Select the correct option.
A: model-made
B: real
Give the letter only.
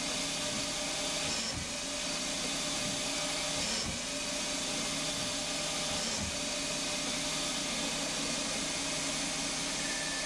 B